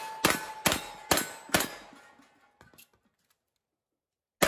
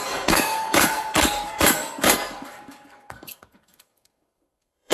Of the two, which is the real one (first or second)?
first